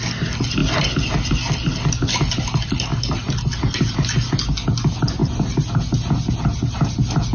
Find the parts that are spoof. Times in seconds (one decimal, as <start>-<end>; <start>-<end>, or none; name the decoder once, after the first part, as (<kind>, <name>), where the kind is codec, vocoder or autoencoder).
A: none